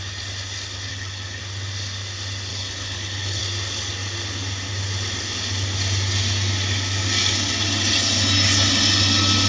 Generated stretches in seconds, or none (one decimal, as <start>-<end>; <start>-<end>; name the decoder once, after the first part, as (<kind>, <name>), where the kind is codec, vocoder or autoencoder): 0.9-1.4 (codec, HILCodec); 2.5-3.4